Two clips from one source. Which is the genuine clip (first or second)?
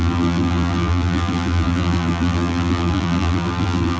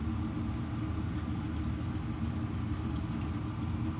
second